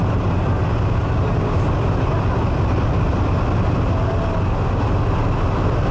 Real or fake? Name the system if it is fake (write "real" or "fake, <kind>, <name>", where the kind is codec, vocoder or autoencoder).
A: real